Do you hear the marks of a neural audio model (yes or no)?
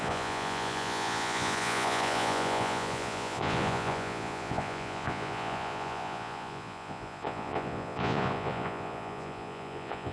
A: yes